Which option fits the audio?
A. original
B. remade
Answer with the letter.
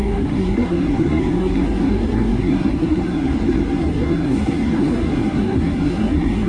B